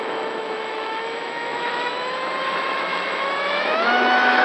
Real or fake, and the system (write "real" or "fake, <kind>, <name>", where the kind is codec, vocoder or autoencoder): fake, autoencoder, DAC-VAE